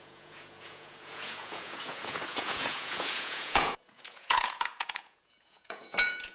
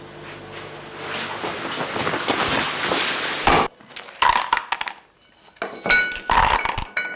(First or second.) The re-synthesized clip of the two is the first